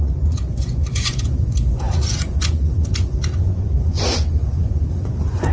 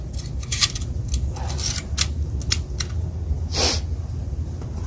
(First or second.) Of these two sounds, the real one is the second